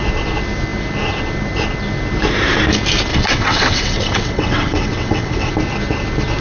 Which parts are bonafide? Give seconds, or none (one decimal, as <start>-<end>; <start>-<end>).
0.0-3.1; 5.5-6.4